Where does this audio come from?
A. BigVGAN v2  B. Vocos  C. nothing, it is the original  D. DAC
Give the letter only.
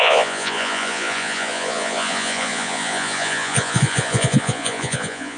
B